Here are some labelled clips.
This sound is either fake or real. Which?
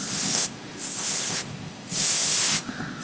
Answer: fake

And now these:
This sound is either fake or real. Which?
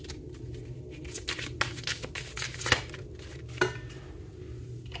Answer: real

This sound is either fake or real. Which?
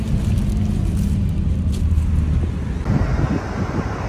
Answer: real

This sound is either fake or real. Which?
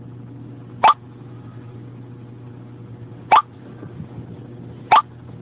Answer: real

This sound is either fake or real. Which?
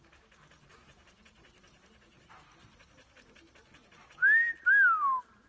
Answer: real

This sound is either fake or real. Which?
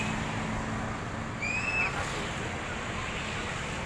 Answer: real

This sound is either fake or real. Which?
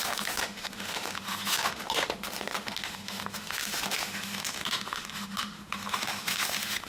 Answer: fake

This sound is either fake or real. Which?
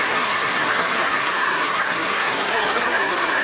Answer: fake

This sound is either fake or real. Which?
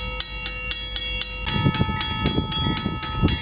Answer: real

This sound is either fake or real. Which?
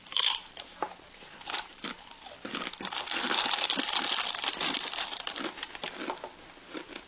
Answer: fake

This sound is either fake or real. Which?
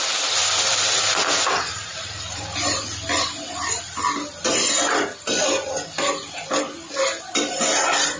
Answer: real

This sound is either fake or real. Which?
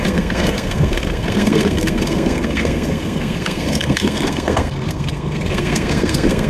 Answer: fake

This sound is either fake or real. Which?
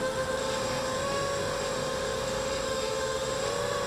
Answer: fake